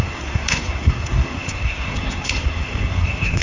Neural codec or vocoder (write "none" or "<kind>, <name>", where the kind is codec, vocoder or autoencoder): codec, SNAC